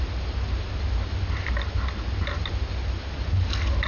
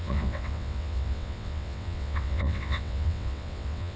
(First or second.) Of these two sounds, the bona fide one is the first